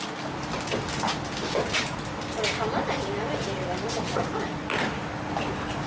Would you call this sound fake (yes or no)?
no